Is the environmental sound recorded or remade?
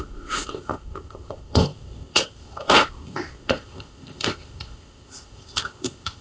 remade